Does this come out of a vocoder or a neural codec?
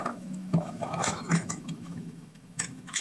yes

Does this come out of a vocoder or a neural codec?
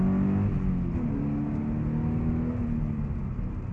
no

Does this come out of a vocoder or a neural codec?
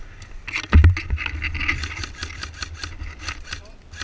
no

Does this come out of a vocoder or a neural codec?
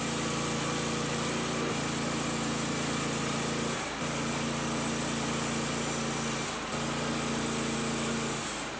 no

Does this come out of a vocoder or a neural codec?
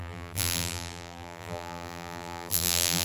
yes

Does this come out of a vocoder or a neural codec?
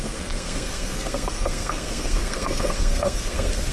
yes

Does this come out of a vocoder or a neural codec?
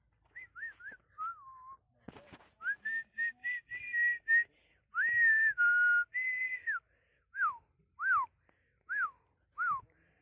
no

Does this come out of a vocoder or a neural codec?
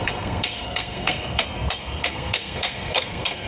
yes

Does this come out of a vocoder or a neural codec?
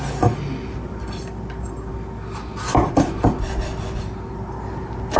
no